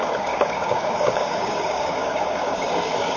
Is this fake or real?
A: fake